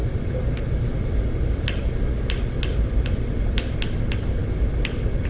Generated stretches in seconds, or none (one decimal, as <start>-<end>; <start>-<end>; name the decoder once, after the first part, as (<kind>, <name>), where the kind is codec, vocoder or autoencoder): none